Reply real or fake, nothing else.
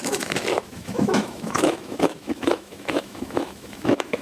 fake